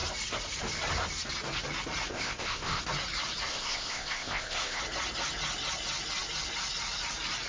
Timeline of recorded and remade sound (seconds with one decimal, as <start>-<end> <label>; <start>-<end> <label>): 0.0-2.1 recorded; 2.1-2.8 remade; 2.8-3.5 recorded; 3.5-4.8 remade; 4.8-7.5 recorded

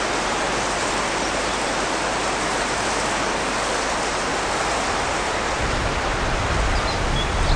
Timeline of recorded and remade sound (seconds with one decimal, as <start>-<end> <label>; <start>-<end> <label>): 0.0-2.5 recorded; 2.5-3.1 remade; 3.1-4.3 recorded; 4.3-5.6 remade; 5.6-7.6 recorded

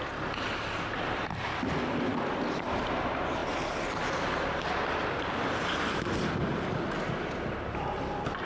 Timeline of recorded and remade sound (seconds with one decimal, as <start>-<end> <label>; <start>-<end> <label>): 0.0-8.4 recorded

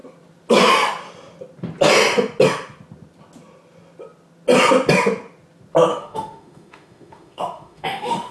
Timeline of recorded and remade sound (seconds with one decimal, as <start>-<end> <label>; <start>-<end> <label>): 0.0-5.9 recorded; 5.9-8.3 remade

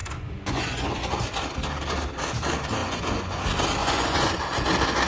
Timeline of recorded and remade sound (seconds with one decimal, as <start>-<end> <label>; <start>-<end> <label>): 0.0-1.2 remade; 1.2-2.8 recorded; 2.8-3.4 remade; 3.4-3.8 recorded; 3.8-4.3 remade; 4.3-5.1 recorded

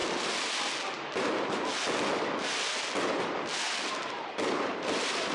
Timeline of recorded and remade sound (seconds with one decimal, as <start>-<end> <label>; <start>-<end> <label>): 0.0-3.2 recorded; 3.2-5.3 remade